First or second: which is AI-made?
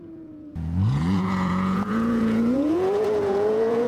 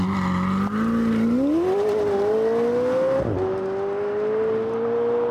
first